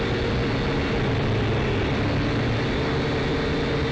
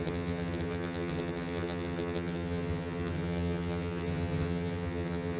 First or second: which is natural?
first